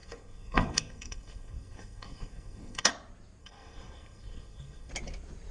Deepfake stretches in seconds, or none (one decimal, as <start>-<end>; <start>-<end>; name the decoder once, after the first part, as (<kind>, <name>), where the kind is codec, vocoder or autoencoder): 0.0-2.9 (codec, SNAC); 3.4-4.9